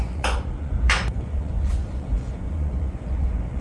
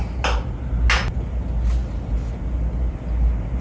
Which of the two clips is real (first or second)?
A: second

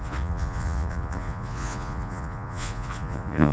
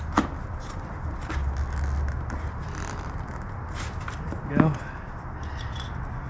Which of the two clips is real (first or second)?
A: second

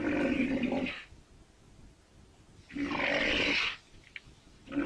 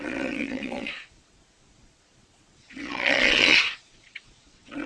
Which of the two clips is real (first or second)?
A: first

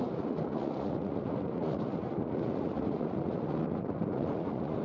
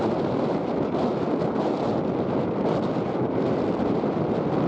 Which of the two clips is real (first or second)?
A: second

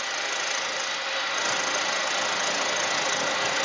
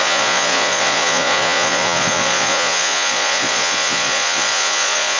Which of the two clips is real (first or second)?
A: first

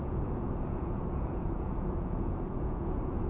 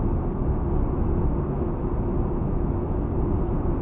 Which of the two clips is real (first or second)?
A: second